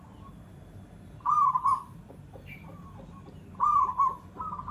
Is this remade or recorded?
remade